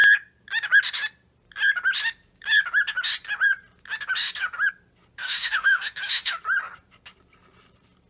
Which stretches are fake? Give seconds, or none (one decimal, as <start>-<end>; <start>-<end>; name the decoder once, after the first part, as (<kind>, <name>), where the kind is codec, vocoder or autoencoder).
5.2-6.4 (autoencoder, DAC-VAE)